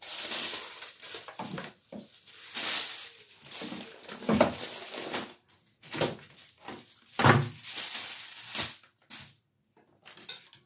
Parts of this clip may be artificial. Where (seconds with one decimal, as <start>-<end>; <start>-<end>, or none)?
none